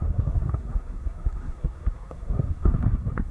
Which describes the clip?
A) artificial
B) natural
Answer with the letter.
A